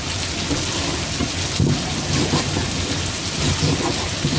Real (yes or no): yes